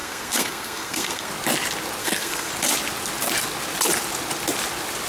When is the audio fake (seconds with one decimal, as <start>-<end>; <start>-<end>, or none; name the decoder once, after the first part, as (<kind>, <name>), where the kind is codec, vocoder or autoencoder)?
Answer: 0.0-1.3 (codec, SNAC); 2.0-2.5